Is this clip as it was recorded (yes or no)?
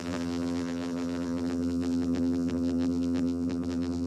no